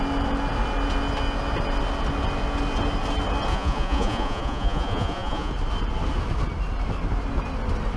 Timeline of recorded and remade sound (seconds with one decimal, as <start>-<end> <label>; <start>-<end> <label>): 0.0-3.5 recorded; 3.5-5.5 remade; 5.5-8.0 recorded